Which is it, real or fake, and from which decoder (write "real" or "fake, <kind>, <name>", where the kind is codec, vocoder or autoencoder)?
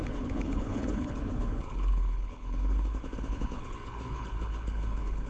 fake, codec, HILCodec